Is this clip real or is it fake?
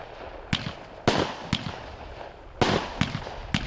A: real